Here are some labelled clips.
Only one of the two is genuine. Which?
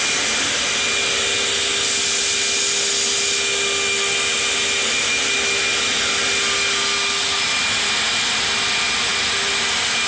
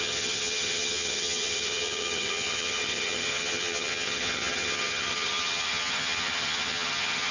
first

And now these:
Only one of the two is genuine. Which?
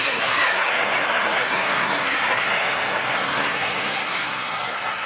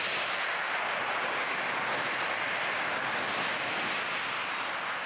second